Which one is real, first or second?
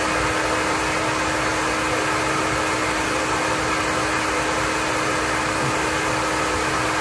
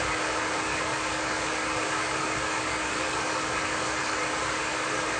first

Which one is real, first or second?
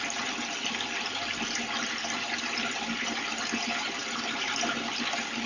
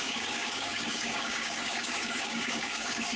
first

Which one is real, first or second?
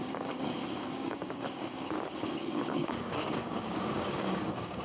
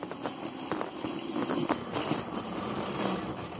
second